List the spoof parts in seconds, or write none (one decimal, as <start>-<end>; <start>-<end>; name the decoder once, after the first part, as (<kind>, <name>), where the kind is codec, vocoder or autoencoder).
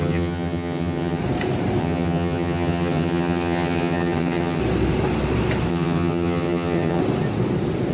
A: 0.0-1.2 (vocoder, HiFi-GAN); 1.8-4.6; 5.7-7.0